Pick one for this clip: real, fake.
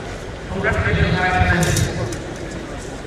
fake